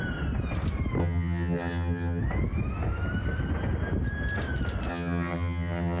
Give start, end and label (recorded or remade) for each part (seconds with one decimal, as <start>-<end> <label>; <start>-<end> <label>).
0.0-1.0 recorded; 1.0-2.2 remade; 2.2-4.9 recorded; 4.9-6.0 remade